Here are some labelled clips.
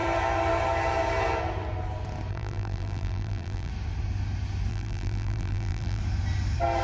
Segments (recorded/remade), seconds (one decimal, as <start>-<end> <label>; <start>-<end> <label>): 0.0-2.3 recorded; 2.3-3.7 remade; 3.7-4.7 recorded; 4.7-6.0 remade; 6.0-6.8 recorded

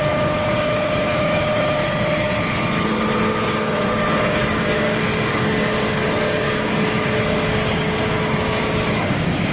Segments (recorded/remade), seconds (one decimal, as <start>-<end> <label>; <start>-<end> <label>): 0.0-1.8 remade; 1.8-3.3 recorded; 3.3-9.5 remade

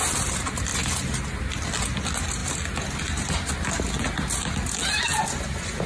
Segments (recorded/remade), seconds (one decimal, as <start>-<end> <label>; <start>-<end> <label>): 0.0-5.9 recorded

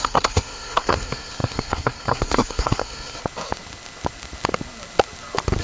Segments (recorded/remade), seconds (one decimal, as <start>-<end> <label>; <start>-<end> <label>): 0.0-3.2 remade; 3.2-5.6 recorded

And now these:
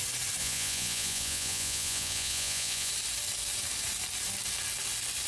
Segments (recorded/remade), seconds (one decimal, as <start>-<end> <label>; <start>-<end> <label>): 0.0-0.4 recorded; 0.4-2.9 remade; 2.9-5.3 recorded

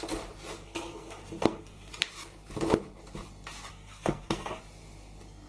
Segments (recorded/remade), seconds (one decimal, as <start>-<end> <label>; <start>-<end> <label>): 0.0-0.6 recorded; 0.6-1.9 remade; 1.9-3.7 recorded; 3.7-4.6 remade; 4.6-5.5 recorded